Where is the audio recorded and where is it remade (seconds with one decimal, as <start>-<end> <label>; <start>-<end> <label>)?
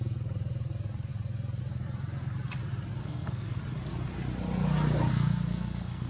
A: 0.0-3.0 recorded; 3.0-3.6 remade; 3.6-5.1 recorded; 5.1-6.1 remade